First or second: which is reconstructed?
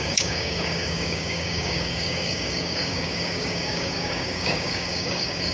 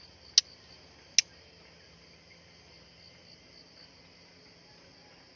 first